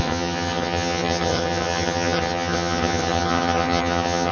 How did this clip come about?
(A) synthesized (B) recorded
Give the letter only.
A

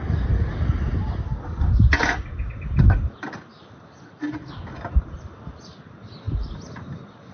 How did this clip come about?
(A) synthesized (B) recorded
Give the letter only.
B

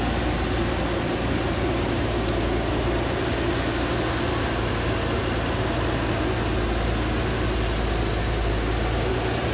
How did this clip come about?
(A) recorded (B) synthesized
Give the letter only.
A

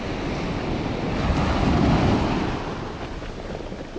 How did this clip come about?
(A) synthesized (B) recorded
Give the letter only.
B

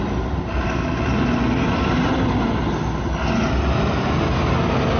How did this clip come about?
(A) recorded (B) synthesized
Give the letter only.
A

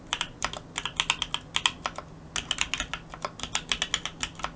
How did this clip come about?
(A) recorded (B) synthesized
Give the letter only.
A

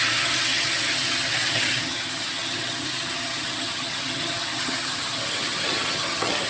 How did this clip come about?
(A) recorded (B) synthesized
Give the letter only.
B